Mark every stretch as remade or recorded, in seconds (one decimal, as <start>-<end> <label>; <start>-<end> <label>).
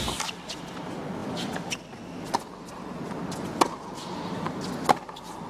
0.0-5.5 recorded